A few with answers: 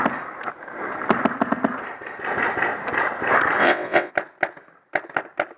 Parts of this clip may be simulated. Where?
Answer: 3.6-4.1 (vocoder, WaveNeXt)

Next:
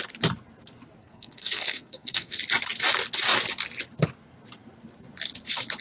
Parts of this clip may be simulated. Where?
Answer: 1.0-2.4 (codec, SNAC)

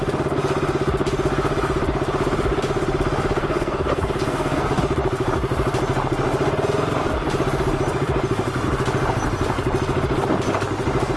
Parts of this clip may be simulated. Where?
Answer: 3.4-4.8 (codec, SNAC)